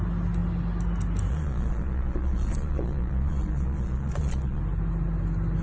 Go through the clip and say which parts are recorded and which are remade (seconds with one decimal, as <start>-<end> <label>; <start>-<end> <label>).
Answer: 0.0-1.3 recorded; 1.3-4.6 remade; 4.6-5.6 recorded